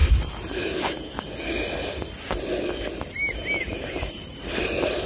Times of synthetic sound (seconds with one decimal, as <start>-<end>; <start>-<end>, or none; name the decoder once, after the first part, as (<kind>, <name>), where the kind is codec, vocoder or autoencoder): none